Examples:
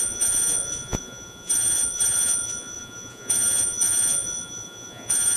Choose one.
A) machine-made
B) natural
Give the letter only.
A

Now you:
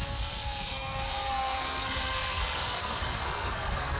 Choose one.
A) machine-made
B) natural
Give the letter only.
A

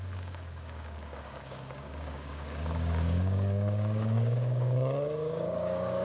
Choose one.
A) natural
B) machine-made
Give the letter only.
B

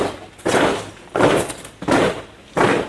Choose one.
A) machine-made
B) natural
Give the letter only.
B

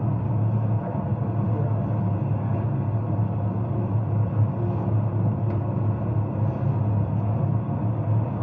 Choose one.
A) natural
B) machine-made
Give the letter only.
A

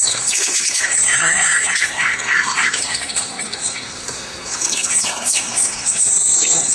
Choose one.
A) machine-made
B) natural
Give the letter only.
A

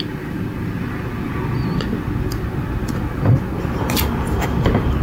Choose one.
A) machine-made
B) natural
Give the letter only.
B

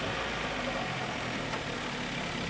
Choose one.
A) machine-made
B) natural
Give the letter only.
B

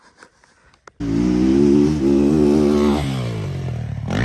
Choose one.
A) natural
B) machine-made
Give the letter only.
A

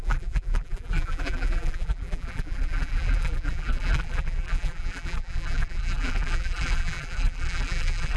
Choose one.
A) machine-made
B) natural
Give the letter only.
A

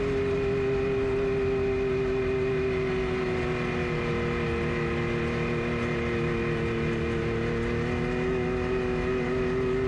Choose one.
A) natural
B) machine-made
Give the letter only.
A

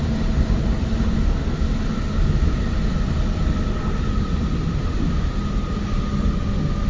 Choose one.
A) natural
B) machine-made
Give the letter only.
A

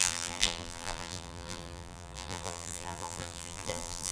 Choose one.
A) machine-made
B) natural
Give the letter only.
A